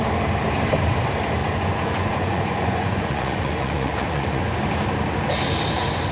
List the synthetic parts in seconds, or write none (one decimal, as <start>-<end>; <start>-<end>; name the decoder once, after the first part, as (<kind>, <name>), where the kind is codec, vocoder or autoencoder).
1.4-4.4 (vocoder, Vocos)

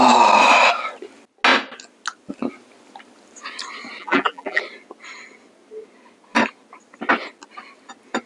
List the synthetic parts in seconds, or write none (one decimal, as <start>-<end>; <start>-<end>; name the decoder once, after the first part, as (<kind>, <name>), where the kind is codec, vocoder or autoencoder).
4.0-4.6 (vocoder, BigVGAN v2)

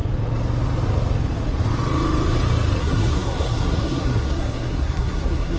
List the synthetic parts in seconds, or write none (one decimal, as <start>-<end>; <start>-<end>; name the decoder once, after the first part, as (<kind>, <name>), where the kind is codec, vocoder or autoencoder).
2.8-5.6 (codec, SNAC)

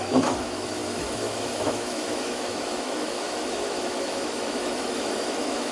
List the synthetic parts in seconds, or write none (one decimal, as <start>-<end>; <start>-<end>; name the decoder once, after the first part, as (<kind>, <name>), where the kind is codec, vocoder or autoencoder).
0.0-5.7 (autoencoder, DAC-VAE)

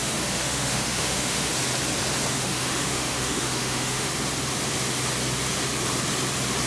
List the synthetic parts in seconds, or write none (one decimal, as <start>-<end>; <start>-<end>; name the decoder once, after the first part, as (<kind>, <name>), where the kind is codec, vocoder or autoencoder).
0.0-1.5 (autoencoder, DAC-VAE); 2.3-4.1